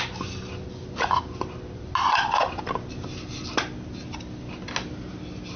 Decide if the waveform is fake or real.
real